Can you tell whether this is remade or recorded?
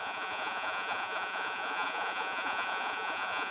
remade